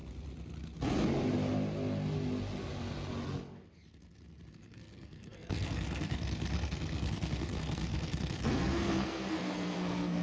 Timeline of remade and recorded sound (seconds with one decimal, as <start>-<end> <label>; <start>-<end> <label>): 0.0-4.5 recorded; 4.5-10.2 remade

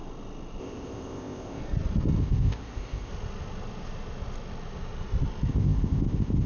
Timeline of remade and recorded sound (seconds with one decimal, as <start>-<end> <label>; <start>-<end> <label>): 0.0-0.6 recorded; 0.6-1.6 remade; 1.6-2.2 recorded; 2.2-3.1 remade; 3.1-5.5 recorded; 5.5-6.5 remade

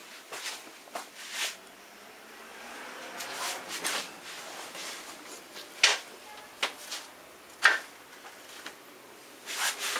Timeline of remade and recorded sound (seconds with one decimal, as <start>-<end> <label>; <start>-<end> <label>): 0.0-10.0 recorded

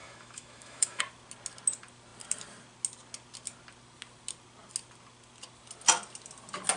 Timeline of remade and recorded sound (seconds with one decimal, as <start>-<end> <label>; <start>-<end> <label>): 0.0-1.0 remade; 1.0-6.8 recorded

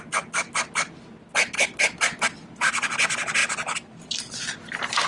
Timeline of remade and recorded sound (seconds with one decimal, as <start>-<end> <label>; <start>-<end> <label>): 0.0-5.1 recorded

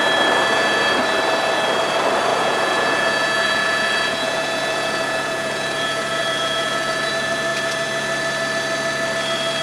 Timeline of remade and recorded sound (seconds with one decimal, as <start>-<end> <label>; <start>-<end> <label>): 0.0-2.3 recorded; 2.3-7.1 remade; 7.1-9.6 recorded